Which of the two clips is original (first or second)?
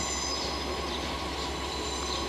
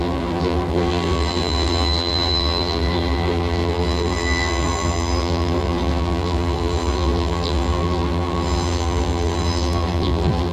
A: first